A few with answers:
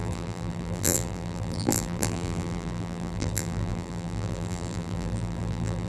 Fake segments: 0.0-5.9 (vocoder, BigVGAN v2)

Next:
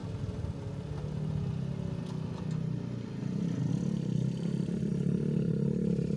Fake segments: none

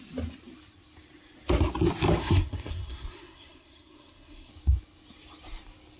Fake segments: 2.2-4.5 (codec, SNAC)

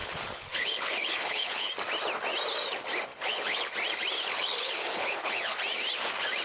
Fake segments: 0.0-1.7 (codec, HILCodec); 3.1-3.7; 4.3-5.6

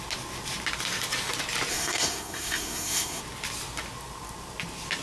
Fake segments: 1.7-3.2 (codec, SNAC)

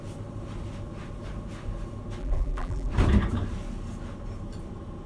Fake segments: 2.2-2.9 (vocoder, BigVGAN v2)

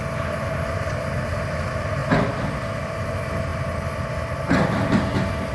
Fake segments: none

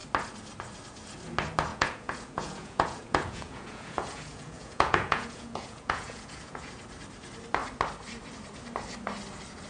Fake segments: 1.7-6.7 (vocoder, Vocos)